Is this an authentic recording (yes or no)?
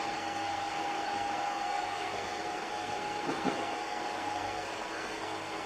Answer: no